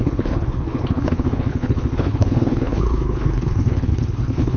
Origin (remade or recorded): remade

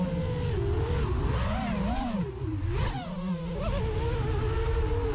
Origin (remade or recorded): recorded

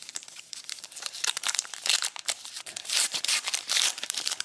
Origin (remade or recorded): remade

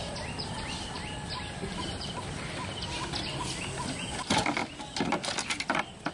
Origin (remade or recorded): recorded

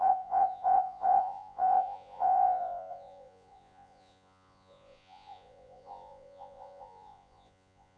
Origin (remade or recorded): remade